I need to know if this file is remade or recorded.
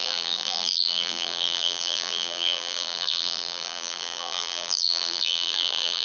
remade